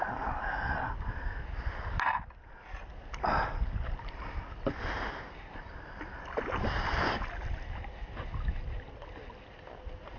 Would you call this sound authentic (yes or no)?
yes